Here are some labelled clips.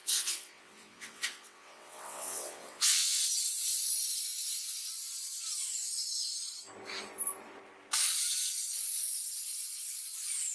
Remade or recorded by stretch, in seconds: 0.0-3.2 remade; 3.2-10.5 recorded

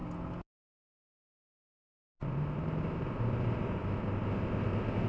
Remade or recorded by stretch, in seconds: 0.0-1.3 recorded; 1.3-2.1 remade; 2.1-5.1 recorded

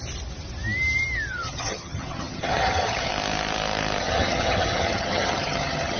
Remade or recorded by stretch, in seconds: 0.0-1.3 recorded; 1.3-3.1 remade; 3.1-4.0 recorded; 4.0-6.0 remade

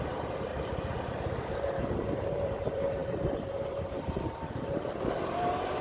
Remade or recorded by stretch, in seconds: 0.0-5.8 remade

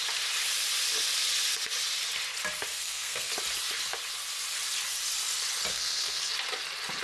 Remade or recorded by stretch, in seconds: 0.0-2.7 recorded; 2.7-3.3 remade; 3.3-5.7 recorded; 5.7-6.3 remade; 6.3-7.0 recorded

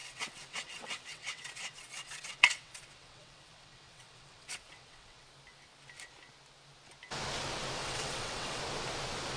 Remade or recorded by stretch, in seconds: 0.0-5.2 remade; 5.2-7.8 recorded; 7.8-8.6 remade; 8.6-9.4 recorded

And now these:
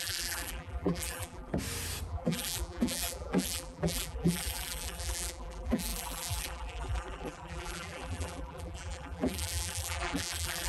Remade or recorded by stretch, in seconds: 0.0-1.5 remade; 1.5-2.1 recorded; 2.1-10.7 remade

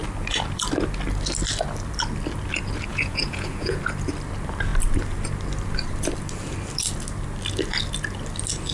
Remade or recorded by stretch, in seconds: 0.0-2.9 recorded; 2.9-3.8 remade; 3.8-8.7 recorded